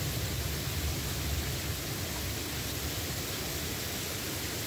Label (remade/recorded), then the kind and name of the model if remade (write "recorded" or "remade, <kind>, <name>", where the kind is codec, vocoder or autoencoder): recorded